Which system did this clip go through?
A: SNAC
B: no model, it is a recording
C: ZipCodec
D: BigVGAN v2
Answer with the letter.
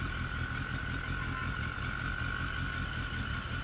B